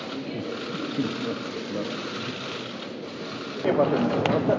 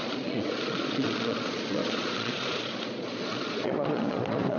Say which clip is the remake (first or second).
second